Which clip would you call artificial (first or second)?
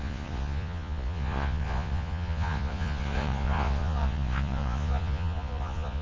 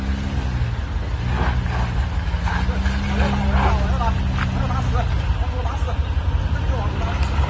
first